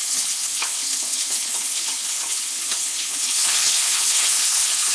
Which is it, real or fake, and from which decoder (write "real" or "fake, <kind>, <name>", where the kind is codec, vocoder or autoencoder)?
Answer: fake, codec, HILCodec